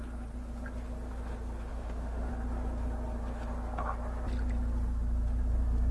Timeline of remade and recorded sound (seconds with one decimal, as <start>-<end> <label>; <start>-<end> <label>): 0.0-1.7 recorded; 1.7-2.3 remade; 2.3-5.9 recorded